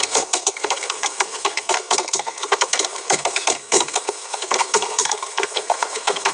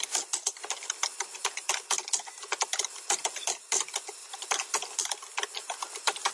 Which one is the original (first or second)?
second